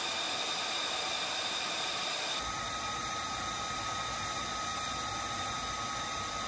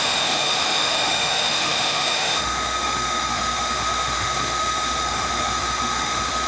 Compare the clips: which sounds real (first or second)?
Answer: first